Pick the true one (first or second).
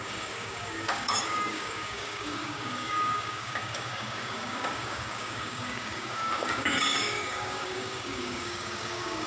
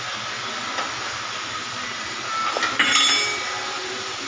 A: second